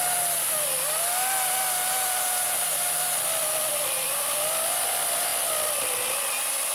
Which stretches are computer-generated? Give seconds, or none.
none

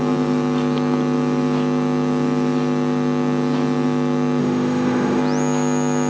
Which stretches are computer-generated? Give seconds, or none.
4.4-5.2 (autoencoder, DAC-VAE)

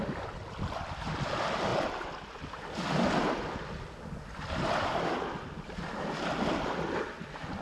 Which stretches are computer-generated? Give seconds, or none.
none

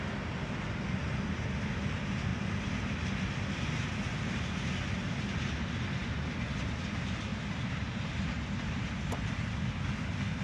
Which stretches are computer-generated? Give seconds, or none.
7.3-8.9 (vocoder, BigVGAN v2)

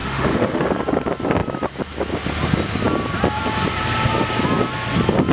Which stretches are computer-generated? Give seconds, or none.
0.0-0.6 (autoencoder, DAC-VAE)